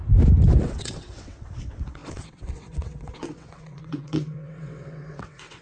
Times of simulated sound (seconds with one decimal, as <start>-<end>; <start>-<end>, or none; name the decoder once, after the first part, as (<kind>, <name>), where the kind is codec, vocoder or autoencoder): 0.6-5.6 (vocoder, WaveNeXt)